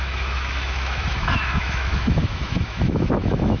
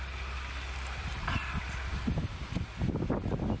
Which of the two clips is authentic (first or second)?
second